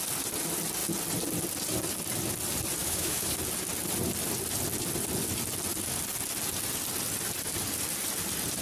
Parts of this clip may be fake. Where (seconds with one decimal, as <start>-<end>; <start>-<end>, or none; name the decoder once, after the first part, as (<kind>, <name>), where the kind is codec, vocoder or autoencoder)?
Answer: 2.8-3.4 (autoencoder, DAC-VAE)